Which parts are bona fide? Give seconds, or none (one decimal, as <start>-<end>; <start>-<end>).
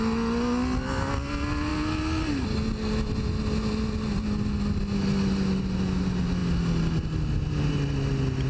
0.0-8.5